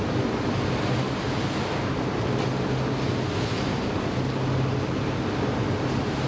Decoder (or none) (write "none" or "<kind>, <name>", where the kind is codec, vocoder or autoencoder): none